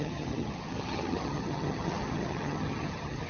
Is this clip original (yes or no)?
no